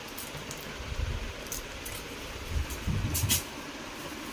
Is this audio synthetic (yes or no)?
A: no